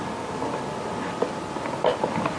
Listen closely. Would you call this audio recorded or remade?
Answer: recorded